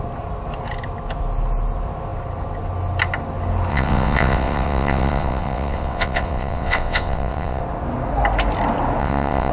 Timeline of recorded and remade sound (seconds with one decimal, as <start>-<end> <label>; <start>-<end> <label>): 0.0-3.7 recorded; 3.7-7.6 remade; 7.6-9.0 recorded; 9.0-9.5 remade